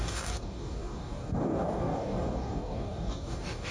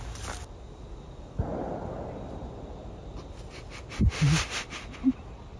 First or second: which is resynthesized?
first